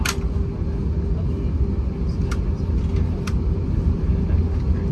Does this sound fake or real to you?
real